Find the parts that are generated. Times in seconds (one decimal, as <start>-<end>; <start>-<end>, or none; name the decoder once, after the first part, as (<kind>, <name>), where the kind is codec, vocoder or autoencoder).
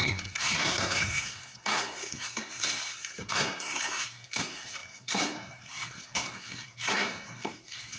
0.0-8.0 (codec, SNAC)